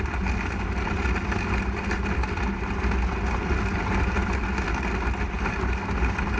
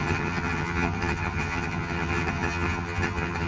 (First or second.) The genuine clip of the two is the first